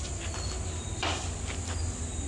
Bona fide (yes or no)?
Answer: yes